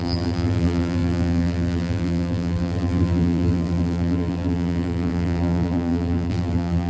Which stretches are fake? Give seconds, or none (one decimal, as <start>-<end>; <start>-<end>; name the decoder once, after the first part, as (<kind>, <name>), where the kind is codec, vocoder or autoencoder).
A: 0.0-6.9 (vocoder, BigVGAN v2)